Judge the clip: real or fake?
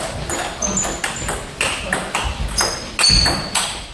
real